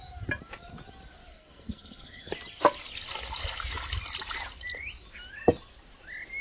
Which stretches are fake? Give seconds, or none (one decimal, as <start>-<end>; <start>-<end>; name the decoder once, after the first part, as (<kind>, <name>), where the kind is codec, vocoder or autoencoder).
1.3-2.3 (codec, SNAC)